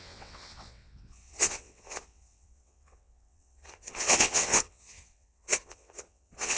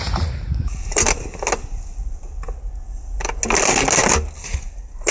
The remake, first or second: first